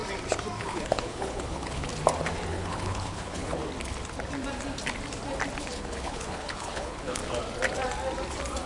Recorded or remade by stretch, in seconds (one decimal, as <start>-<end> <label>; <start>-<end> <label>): 0.0-0.6 recorded; 0.6-1.9 remade; 1.9-2.5 recorded; 2.5-3.6 remade; 3.6-5.6 recorded; 5.6-7.2 remade; 7.2-8.7 recorded